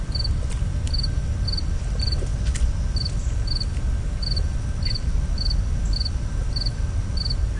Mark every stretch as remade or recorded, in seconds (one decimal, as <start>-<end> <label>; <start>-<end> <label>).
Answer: 0.0-7.6 recorded